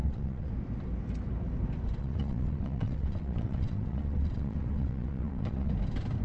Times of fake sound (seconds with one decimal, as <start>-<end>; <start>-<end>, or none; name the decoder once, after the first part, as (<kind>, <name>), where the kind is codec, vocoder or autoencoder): 0.0-0.5 (vocoder, WaveNeXt); 2.0-5.7